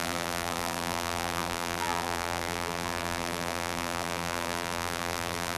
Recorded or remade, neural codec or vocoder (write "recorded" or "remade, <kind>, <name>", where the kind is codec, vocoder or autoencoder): remade, vocoder, BigVGAN v2